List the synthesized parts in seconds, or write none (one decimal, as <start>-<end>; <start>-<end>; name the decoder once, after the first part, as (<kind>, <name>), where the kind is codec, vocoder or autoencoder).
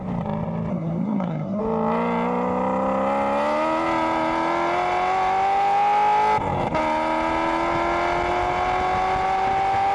0.7-1.6 (codec, SNAC)